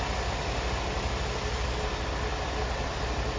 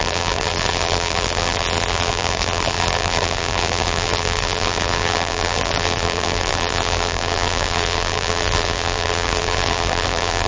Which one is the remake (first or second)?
second